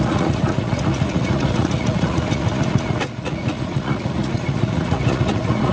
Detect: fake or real fake